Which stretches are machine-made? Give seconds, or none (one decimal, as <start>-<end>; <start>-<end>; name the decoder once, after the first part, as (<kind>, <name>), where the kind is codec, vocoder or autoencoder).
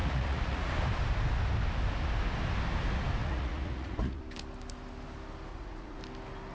0.0-0.7 (vocoder, Vocos); 3.2-4.2; 5.5-6.0